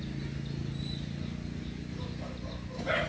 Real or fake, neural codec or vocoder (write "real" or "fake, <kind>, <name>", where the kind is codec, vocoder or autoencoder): real